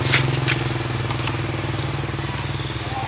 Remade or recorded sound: recorded